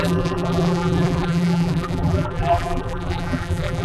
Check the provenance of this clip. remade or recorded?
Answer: remade